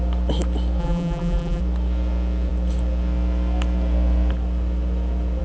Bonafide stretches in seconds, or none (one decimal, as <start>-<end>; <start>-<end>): 0.0-0.8; 1.6-5.4